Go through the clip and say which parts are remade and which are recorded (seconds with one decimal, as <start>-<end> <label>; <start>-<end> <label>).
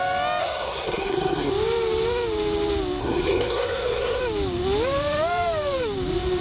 0.0-0.4 recorded; 0.4-1.5 remade; 1.5-3.0 recorded; 3.0-4.2 remade; 4.2-6.4 recorded